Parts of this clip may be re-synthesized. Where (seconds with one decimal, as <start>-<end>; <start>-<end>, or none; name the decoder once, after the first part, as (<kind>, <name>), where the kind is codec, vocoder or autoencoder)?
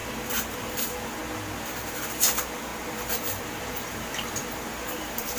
0.6-1.2 (vocoder, BigVGAN v2); 1.7-5.4